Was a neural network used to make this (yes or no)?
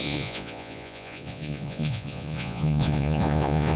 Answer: yes